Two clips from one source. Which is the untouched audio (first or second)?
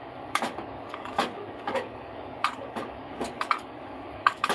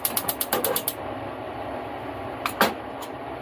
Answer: second